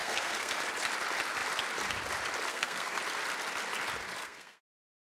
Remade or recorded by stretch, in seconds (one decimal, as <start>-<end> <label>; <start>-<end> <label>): 0.0-0.5 remade; 0.5-2.5 recorded; 2.5-3.0 remade; 3.0-4.2 recorded; 4.2-5.2 remade